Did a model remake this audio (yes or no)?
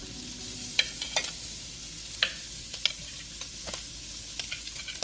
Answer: no